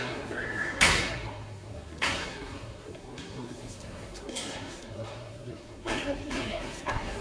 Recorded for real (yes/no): no